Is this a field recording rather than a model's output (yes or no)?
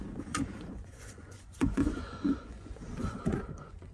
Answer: no